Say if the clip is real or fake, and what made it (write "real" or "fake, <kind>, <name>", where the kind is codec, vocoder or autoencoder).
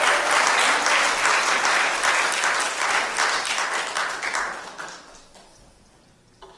real